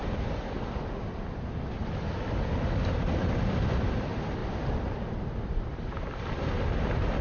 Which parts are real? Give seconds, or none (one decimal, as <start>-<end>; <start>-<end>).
0.0-7.2